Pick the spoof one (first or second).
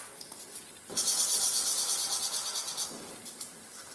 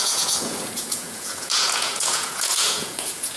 second